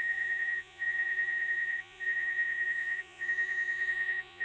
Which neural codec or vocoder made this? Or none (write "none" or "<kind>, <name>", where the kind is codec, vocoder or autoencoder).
vocoder, Vocos